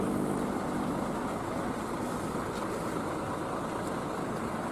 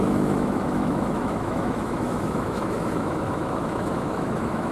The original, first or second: first